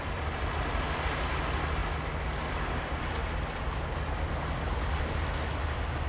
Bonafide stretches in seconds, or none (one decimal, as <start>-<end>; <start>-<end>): 0.0-6.1